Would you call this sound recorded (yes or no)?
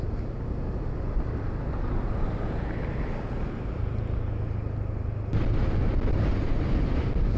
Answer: yes